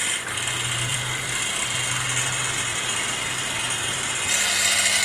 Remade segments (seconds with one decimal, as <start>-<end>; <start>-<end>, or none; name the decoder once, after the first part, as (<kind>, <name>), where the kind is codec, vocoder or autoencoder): 0.9-1.8 (vocoder, BigVGAN v2); 2.7-4.4